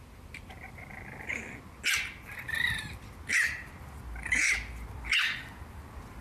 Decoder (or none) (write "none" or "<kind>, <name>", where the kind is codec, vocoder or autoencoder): none